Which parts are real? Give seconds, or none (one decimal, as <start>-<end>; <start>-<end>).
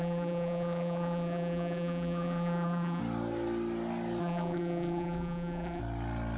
3.0-4.2; 5.8-6.4